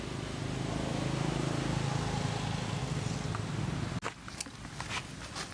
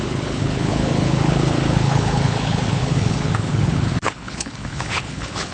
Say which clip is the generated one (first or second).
second